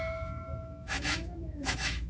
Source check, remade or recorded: remade